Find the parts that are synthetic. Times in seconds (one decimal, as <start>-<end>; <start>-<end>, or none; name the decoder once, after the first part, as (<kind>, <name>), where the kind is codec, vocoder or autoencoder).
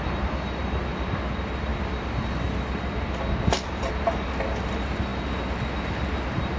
none